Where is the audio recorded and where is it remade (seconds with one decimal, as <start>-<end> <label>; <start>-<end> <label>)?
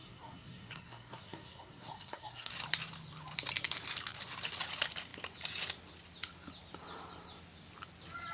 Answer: 0.0-2.5 remade; 2.5-8.3 recorded